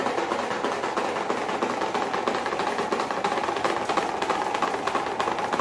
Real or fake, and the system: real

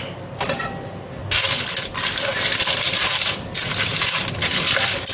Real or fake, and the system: real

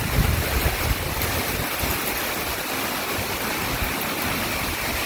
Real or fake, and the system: real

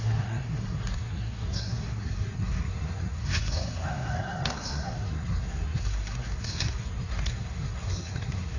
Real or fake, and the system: fake, codec, SNAC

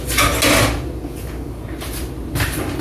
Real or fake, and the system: real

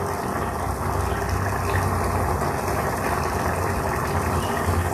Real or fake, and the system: real